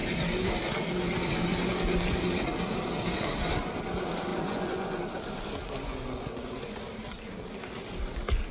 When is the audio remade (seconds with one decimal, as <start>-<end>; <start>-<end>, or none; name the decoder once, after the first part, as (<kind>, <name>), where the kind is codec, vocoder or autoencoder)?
4.3-5.0 (vocoder, Vocos); 5.8-6.9